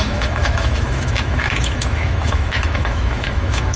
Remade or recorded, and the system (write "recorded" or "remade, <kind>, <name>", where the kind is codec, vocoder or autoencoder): remade, autoencoder, DAC-VAE